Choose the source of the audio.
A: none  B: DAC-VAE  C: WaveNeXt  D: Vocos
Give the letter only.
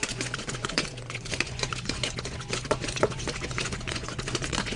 D